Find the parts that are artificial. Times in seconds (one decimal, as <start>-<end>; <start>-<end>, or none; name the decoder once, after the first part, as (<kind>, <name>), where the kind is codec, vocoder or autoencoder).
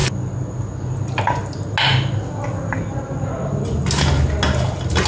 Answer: none